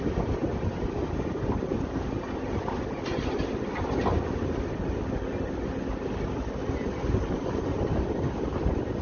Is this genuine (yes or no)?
yes